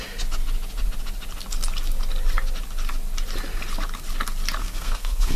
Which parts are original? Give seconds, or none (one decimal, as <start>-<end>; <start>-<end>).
0.0-4.6